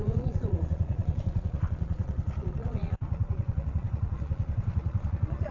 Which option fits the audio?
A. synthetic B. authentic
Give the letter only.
A